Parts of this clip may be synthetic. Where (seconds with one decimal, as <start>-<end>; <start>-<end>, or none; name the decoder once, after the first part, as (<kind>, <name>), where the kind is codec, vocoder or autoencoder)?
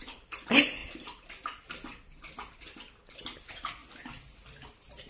none